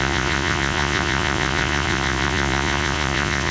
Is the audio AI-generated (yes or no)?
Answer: yes